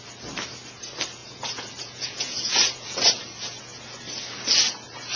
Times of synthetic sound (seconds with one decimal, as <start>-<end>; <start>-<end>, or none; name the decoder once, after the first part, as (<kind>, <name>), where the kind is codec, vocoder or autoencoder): 1.2-3.6 (vocoder, Vocos)

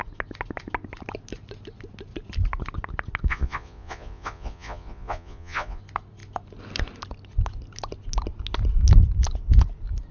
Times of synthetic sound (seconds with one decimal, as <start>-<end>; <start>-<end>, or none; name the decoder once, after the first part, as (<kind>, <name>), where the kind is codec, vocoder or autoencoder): 3.3-5.8 (vocoder, Vocos)

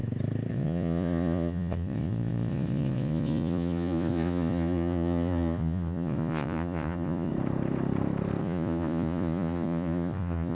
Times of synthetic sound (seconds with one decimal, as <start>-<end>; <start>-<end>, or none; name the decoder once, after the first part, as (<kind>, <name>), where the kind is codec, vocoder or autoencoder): 0.5-7.3 (vocoder, Vocos); 8.4-10.5

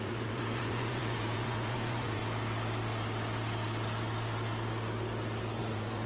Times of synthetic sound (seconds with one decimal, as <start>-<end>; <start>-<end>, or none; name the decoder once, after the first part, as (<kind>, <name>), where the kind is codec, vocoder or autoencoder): 0.0-2.2 (vocoder, Vocos); 5.6-6.1